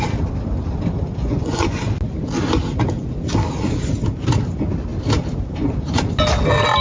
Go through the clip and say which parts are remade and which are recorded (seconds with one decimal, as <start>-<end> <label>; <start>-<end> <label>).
0.0-1.2 recorded; 1.2-1.8 remade; 1.8-6.8 recorded